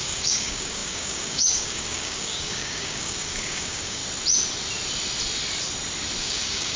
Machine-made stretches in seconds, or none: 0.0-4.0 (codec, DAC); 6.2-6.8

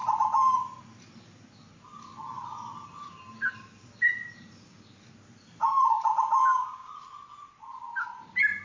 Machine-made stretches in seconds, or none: 6.4-6.9 (codec, DAC)

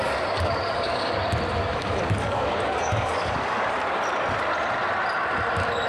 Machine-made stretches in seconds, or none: 0.0-1.2 (codec, DAC); 1.6-3.7

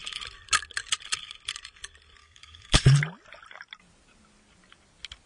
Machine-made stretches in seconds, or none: 2.2-3.0 (codec, DAC)